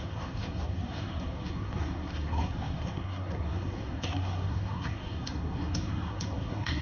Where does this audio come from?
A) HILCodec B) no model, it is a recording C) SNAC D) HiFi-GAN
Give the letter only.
C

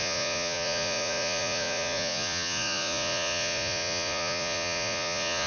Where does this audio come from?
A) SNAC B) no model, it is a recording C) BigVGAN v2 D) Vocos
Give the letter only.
D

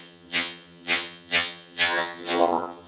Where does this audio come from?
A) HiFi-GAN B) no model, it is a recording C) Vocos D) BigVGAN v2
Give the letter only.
A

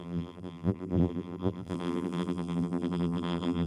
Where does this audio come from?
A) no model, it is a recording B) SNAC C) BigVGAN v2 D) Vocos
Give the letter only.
C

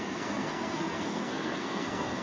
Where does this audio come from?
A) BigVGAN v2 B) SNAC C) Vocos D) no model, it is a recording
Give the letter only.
B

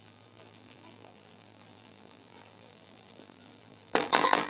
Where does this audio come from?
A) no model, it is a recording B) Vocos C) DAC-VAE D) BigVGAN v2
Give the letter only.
D